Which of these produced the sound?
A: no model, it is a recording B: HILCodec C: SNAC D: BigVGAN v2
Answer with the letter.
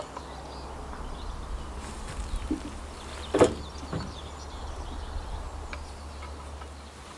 A